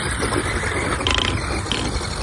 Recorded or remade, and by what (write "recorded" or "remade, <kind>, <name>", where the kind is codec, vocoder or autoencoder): recorded